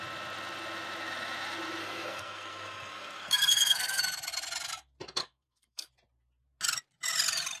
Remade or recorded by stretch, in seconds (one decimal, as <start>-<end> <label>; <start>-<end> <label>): 0.0-1.8 recorded; 1.8-4.0 remade; 4.0-5.2 recorded; 5.2-5.9 remade; 5.9-7.6 recorded

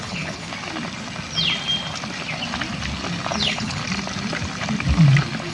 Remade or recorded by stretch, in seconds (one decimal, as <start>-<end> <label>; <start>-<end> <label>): 0.0-0.5 remade; 0.5-3.4 recorded; 3.4-3.8 remade; 3.8-5.5 recorded

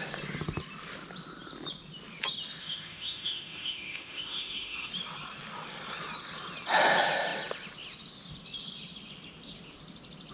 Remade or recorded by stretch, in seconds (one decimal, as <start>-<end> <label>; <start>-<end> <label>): 0.0-2.6 recorded; 2.6-4.9 remade; 4.9-10.3 recorded

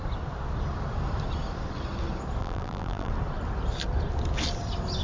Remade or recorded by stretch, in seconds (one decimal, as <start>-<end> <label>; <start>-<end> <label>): 0.0-2.4 recorded; 2.4-3.1 remade; 3.1-5.0 recorded

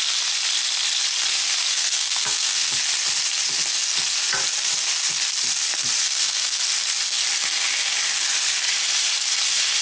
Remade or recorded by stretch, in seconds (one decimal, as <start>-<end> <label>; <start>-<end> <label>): 0.0-1.7 recorded; 1.7-2.7 remade; 2.7-6.0 recorded; 6.0-6.6 remade; 6.6-9.8 recorded

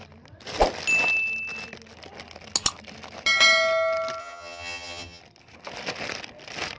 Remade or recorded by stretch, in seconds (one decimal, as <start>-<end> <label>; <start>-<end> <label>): 0.0-4.2 recorded; 4.2-5.2 remade; 5.2-6.8 recorded

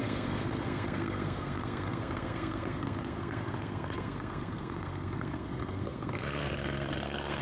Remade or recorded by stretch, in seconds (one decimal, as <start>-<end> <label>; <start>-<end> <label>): 0.0-7.4 remade

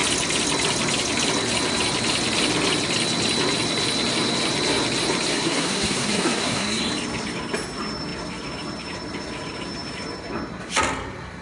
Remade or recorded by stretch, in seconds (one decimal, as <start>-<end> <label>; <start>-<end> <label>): 0.0-5.3 recorded; 5.3-6.8 remade; 6.8-11.4 recorded